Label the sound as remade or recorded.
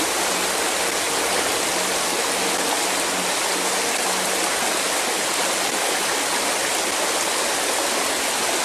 recorded